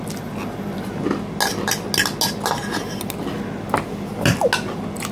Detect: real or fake real